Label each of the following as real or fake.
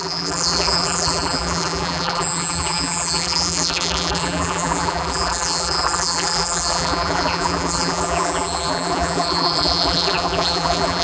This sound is fake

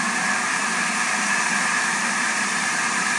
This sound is fake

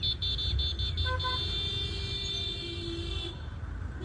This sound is real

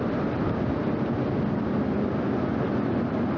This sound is real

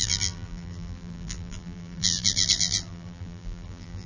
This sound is fake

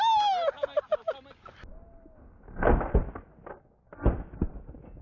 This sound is real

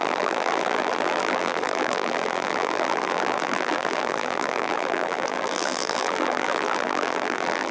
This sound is fake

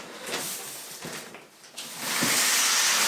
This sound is real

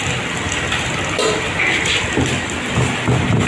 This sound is real